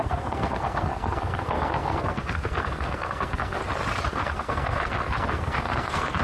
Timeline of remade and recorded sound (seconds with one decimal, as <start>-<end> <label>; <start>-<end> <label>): 0.0-3.6 remade; 3.6-4.1 recorded; 4.1-6.2 remade